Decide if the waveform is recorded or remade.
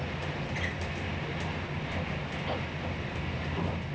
recorded